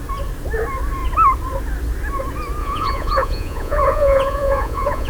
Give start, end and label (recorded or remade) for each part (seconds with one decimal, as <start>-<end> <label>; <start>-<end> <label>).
0.0-2.6 recorded; 2.6-5.1 remade